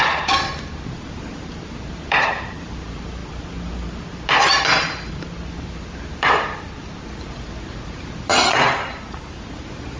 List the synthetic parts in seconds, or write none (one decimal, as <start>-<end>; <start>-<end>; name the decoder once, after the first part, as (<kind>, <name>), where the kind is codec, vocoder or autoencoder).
0.0-3.2 (vocoder, BigVGAN v2); 5.1-10.0